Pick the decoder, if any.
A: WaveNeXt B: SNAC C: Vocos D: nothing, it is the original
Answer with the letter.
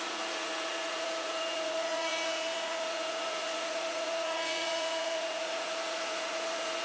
C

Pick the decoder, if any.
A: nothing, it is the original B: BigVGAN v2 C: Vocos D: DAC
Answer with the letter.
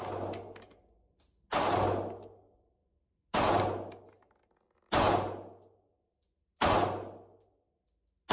A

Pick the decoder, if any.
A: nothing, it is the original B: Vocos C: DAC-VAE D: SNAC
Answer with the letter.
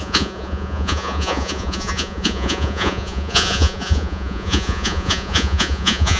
B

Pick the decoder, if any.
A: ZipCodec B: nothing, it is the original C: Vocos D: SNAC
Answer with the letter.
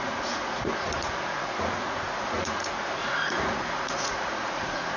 C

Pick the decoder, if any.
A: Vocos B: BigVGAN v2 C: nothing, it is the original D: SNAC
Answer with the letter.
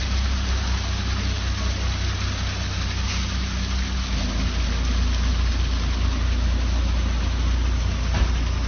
C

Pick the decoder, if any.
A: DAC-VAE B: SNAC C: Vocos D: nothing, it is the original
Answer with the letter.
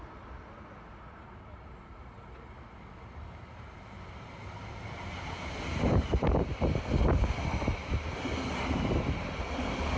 D